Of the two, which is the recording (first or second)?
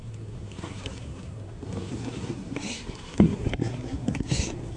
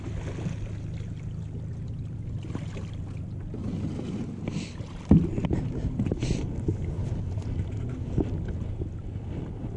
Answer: second